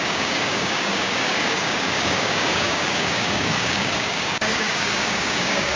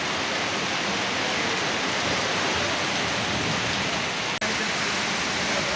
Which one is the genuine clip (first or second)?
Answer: second